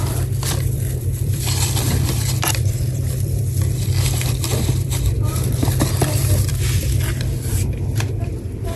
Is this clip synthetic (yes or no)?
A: yes